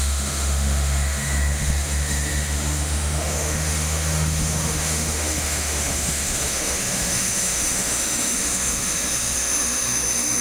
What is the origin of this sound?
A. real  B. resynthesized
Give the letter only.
B